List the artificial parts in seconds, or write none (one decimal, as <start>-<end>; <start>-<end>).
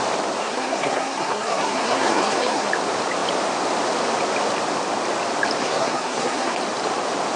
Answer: 0.4-2.7; 5.6-6.6